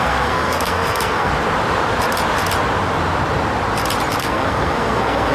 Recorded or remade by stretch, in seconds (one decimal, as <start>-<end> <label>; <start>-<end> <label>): 0.0-1.3 remade; 1.3-4.2 recorded; 4.2-5.3 remade